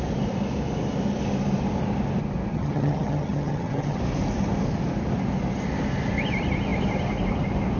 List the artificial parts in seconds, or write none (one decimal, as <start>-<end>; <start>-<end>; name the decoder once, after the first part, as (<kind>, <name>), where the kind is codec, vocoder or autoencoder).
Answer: 2.5-4.0 (vocoder, HiFi-GAN)